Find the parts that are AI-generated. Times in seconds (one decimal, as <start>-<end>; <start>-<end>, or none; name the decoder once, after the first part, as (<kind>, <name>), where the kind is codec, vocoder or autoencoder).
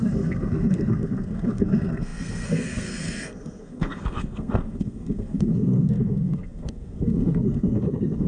0.0-8.3 (codec, SNAC)